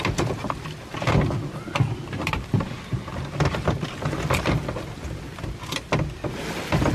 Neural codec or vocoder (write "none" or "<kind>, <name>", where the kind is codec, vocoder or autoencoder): none